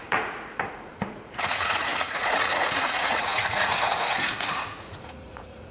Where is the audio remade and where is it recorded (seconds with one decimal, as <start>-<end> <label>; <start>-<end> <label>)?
0.0-5.7 remade

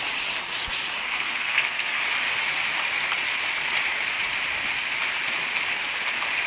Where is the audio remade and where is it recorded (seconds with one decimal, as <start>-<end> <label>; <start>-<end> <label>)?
0.0-1.0 recorded; 1.0-2.0 remade; 2.0-6.5 recorded

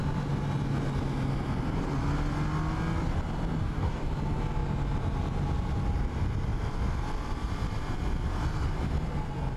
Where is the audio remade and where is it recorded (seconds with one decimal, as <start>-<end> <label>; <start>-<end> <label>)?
0.0-3.6 recorded; 3.6-4.1 remade; 4.1-9.6 recorded

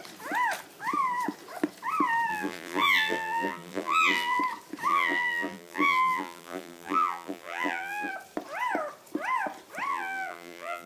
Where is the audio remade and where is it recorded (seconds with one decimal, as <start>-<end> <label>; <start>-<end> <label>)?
0.0-2.3 recorded; 2.3-4.4 remade; 4.4-4.9 recorded; 4.9-8.1 remade; 8.1-9.9 recorded; 9.9-10.9 remade

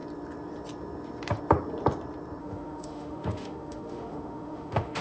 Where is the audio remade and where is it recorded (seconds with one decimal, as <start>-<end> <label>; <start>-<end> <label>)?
0.0-2.4 recorded; 2.4-5.0 remade

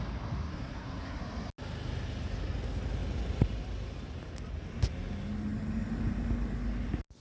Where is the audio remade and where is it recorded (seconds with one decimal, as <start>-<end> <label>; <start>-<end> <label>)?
0.0-0.5 recorded; 0.5-1.2 remade; 1.2-7.2 recorded